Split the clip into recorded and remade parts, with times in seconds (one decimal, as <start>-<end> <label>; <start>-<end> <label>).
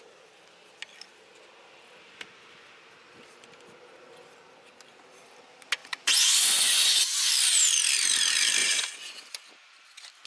0.0-5.8 recorded; 5.8-7.3 remade; 7.3-8.6 recorded; 8.6-9.2 remade; 9.2-10.3 recorded